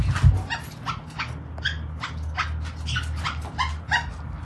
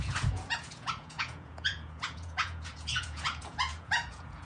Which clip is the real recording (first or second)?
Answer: first